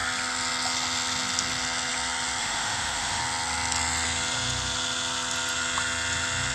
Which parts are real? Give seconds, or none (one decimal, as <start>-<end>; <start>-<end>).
0.0-2.4; 3.2-6.5